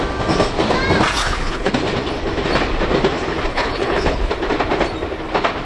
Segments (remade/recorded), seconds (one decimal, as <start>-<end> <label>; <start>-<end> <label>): 0.0-1.2 recorded; 1.2-1.7 remade; 1.7-3.5 recorded; 3.5-4.3 remade; 4.3-5.7 recorded